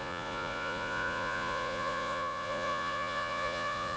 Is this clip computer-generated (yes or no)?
yes